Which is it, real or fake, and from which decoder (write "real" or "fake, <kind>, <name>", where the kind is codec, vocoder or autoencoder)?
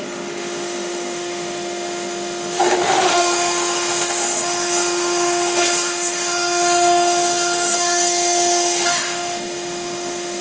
fake, autoencoder, DAC-VAE